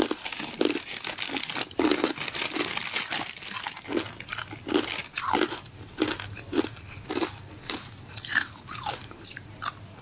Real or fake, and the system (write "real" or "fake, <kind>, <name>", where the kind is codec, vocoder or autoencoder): real